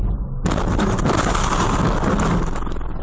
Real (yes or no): yes